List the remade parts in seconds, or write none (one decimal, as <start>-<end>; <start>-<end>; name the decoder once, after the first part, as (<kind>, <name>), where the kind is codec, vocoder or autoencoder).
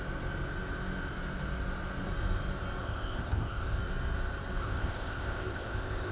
2.8-3.8 (codec, ZipCodec); 4.6-6.1